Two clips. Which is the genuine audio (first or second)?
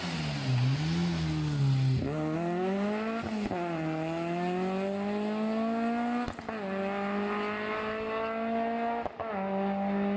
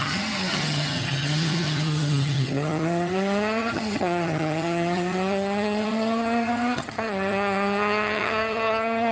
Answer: first